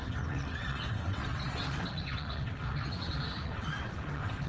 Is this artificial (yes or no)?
yes